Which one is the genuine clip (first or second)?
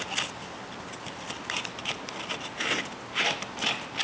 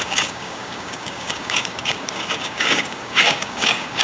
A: first